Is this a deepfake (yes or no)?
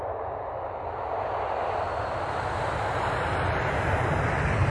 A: no